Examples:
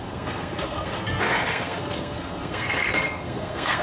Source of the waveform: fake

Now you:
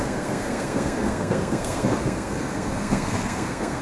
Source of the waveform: fake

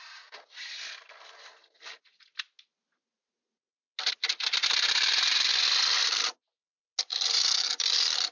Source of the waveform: real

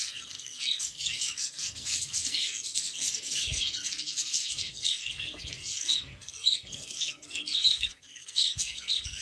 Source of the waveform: fake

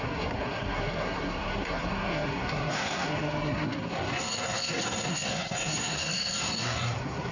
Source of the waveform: fake